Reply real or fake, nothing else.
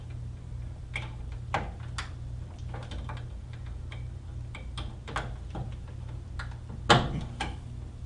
real